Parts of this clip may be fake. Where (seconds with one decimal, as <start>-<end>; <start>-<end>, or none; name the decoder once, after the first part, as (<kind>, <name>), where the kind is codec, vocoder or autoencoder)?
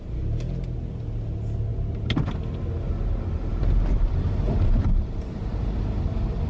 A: none